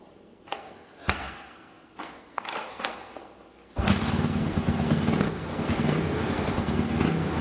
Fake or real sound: fake